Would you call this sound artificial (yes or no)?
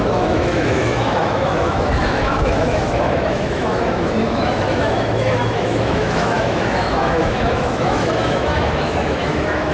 yes